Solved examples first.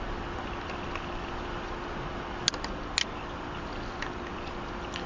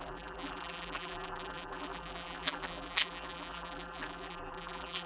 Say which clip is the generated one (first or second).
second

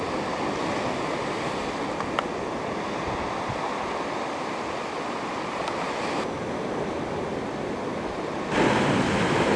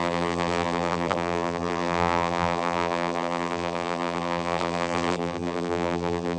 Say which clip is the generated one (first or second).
second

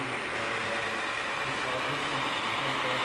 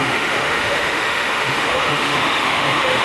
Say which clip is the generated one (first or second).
second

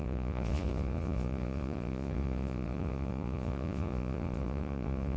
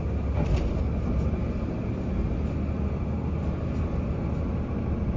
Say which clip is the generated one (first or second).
first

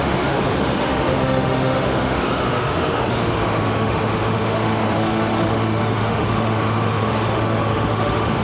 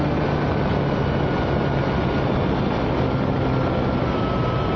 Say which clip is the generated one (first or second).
first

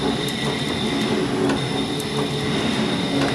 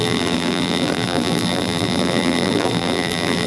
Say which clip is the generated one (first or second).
second